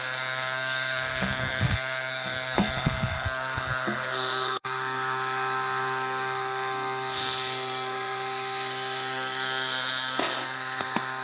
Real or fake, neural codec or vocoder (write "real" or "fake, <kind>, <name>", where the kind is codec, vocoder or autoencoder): fake, codec, SNAC